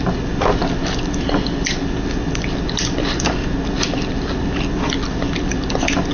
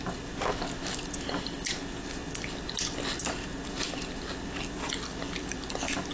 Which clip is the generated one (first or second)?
first